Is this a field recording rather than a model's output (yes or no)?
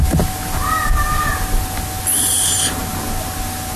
yes